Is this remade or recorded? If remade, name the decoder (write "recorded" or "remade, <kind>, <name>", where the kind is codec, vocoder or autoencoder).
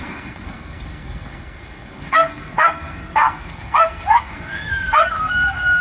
remade, codec, SNAC